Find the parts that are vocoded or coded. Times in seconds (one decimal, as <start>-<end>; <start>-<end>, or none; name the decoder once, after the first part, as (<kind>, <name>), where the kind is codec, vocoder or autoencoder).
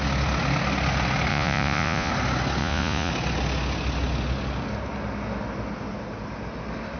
1.3-2.1 (vocoder, Vocos); 2.6-3.1